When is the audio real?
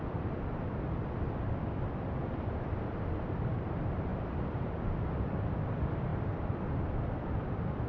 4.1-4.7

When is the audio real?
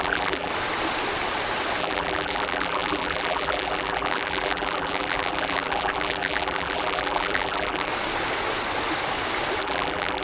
0.5-1.8; 7.9-9.6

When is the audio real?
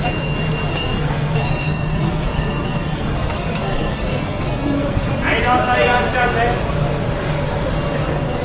0.0-0.7; 5.1-8.4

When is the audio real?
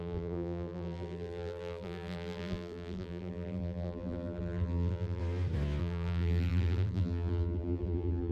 5.2-5.8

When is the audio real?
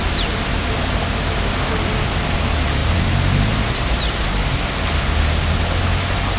0.0-0.5; 1.1-2.8; 4.5-6.4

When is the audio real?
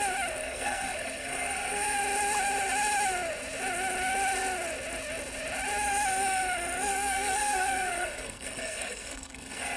0.0-0.4; 2.0-6.9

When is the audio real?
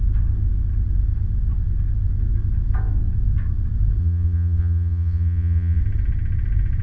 0.0-4.0; 5.8-6.8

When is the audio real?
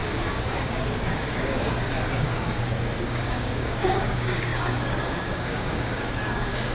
none